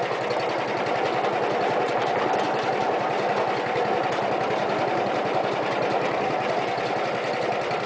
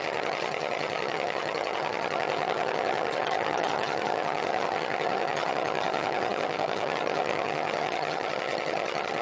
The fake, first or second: second